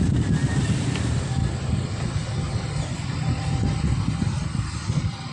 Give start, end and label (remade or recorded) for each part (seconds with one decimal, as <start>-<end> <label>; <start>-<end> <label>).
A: 0.0-5.3 remade